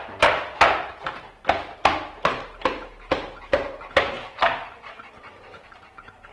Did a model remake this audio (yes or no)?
no